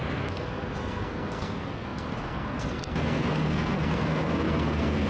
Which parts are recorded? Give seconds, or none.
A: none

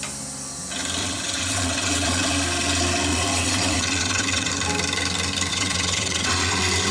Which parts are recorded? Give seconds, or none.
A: 0.0-1.0; 2.3-3.1; 4.5-5.5; 6.3-6.9